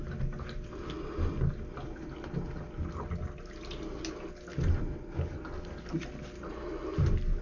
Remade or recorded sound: recorded